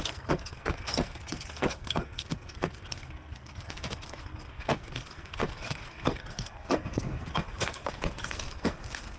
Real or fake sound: fake